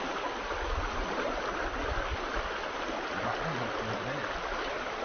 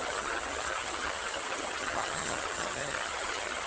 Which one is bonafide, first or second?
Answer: first